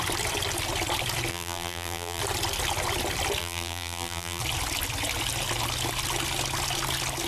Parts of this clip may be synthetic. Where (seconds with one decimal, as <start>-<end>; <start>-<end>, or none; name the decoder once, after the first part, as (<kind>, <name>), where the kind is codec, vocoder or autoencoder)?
1.3-2.2 (vocoder, BigVGAN v2); 3.4-4.4